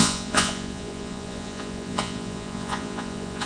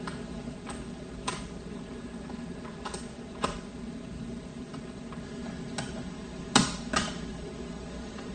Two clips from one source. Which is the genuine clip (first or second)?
second